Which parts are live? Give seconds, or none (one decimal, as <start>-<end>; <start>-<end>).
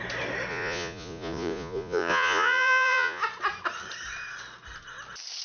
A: 0.0-0.5; 3.2-5.4